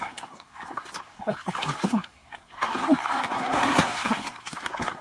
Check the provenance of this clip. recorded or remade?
remade